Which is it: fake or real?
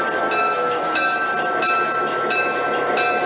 real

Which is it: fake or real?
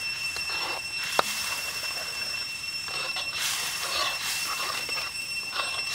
fake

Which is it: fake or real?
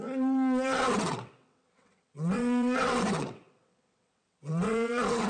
fake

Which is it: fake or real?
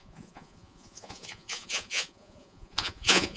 fake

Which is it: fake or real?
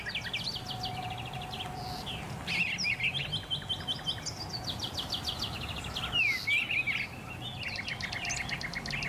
real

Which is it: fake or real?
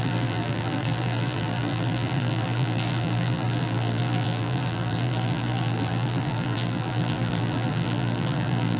fake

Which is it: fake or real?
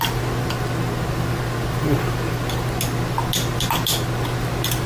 real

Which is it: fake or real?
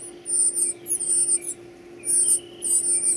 real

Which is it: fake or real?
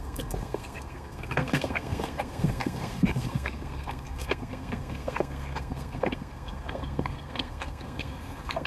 fake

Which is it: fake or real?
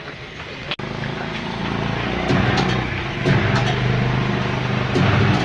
real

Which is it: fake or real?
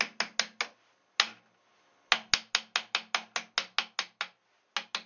real